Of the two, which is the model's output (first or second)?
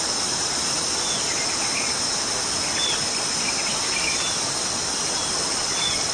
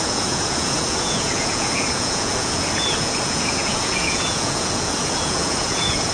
second